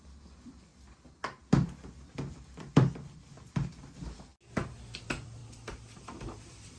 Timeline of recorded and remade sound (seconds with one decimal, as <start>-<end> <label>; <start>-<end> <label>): 0.0-0.7 remade; 0.7-2.3 recorded; 2.3-4.3 remade; 4.3-5.0 recorded; 5.0-5.4 remade; 5.4-6.0 recorded; 6.0-6.8 remade